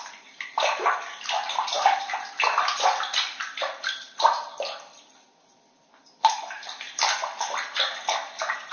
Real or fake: fake